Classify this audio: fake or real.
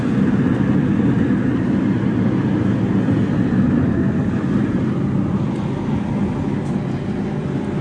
real